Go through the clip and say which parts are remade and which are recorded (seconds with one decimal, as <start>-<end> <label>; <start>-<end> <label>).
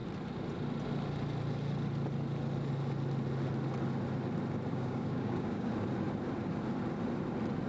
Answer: 0.0-4.7 recorded; 4.7-5.7 remade; 5.7-7.7 recorded